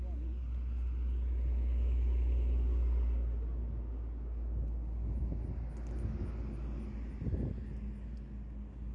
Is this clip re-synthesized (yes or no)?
no